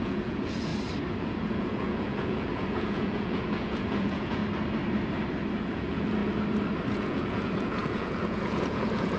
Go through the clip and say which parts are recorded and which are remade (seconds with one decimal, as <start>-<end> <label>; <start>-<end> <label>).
0.0-0.7 remade; 0.7-1.2 recorded; 1.2-4.4 remade; 4.4-5.6 recorded; 5.6-6.2 remade; 6.2-6.9 recorded; 6.9-9.2 remade